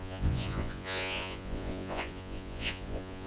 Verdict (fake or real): fake